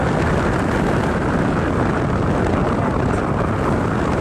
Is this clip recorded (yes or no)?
yes